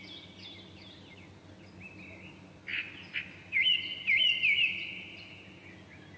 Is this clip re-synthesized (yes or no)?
no